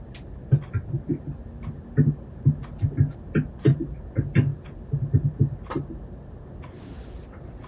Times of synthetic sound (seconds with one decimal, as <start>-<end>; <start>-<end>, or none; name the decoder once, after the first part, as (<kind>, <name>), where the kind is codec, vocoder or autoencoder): none